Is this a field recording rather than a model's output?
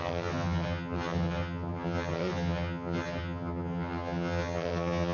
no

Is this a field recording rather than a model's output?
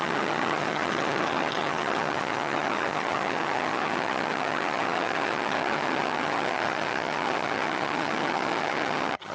no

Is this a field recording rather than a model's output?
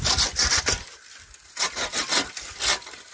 yes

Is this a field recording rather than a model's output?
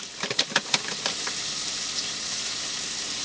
yes